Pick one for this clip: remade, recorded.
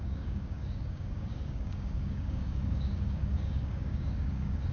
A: remade